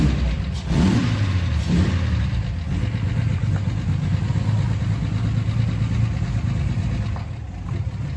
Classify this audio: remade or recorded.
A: recorded